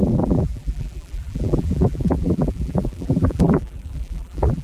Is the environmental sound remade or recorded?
remade